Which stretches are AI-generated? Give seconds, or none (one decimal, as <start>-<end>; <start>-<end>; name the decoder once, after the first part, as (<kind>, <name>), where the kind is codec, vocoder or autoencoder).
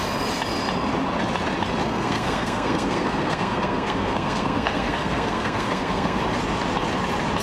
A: 1.8-6.2 (codec, SNAC)